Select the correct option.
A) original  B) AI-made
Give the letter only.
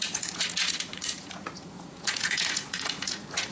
B